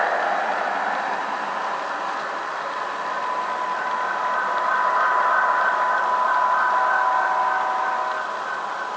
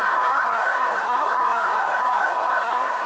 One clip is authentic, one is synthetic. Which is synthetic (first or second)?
second